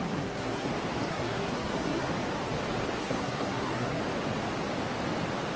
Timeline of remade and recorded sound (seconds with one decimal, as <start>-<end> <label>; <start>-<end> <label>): 0.0-0.7 remade; 0.7-1.1 recorded; 1.1-2.1 remade; 2.1-3.0 recorded; 3.0-4.0 remade; 4.0-5.6 recorded